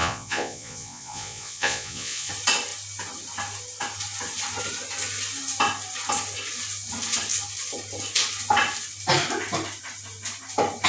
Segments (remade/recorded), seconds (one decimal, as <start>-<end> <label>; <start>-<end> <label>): 0.0-2.3 remade; 2.3-10.9 recorded